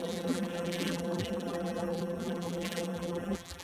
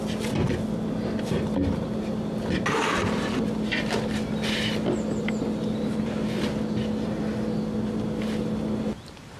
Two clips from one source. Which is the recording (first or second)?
second